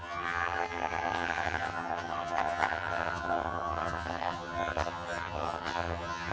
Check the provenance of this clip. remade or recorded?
remade